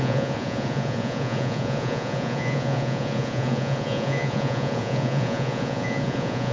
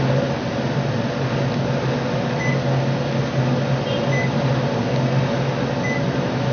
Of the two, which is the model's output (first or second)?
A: first